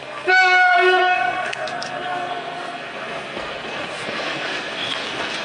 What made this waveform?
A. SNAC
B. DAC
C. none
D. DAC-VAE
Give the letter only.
A